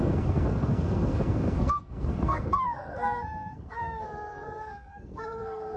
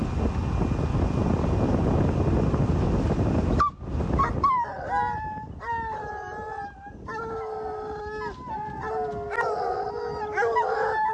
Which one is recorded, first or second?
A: second